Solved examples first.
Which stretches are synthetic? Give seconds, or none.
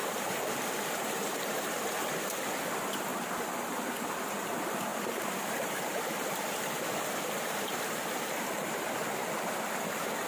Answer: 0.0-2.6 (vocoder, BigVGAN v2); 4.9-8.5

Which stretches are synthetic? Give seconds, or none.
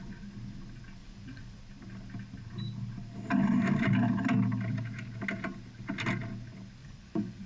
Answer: 1.0-1.6 (vocoder, Vocos); 6.8-7.5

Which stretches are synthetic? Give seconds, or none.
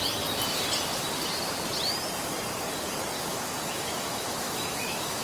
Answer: 3.3-5.2 (autoencoder, DAC-VAE)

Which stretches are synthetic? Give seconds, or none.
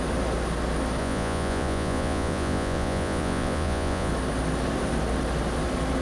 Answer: 1.0-4.1 (vocoder, Vocos)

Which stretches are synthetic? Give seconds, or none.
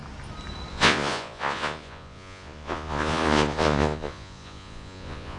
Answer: 0.7-5.4 (vocoder, Vocos)